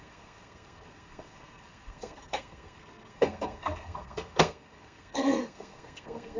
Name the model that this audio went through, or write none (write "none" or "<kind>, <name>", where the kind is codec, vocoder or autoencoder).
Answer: codec, SNAC